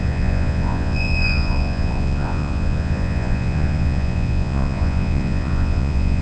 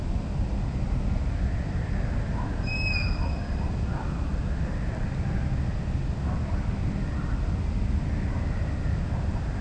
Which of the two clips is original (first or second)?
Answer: second